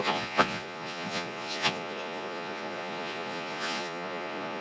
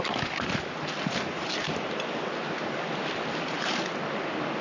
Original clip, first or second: second